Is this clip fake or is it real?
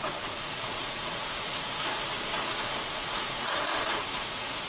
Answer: fake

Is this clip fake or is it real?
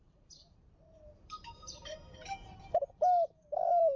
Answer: fake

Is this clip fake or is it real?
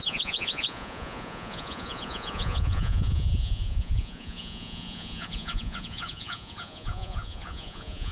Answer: fake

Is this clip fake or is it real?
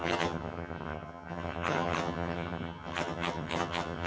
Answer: fake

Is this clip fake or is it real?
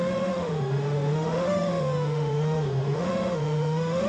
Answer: fake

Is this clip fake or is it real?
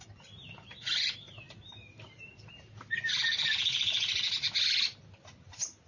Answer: real